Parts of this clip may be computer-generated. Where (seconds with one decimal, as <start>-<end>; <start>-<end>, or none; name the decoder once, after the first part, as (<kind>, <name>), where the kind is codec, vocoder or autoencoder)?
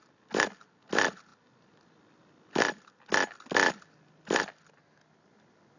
none